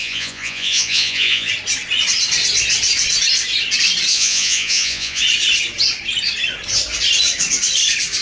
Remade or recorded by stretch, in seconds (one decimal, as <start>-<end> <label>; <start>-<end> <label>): 0.0-1.5 remade; 1.5-4.1 recorded; 4.1-5.2 remade; 5.2-8.2 recorded